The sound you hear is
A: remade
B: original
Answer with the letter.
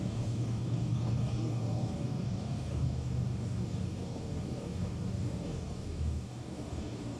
A